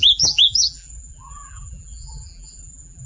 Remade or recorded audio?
remade